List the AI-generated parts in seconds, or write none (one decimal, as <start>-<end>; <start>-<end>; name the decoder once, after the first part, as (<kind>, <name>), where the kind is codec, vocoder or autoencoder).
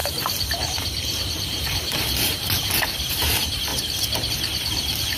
0.0-3.7 (vocoder, BigVGAN v2); 4.3-5.2